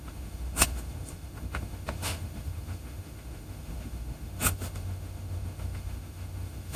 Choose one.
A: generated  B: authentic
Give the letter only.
A